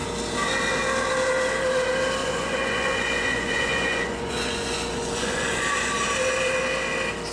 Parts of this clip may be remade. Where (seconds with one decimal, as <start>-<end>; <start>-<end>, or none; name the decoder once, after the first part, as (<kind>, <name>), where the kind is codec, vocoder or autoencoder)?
2.2-5.9 (vocoder, Vocos)